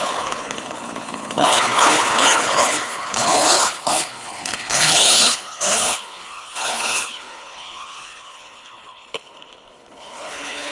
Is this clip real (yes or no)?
no